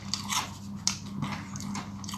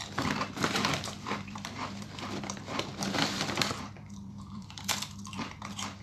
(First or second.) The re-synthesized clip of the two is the second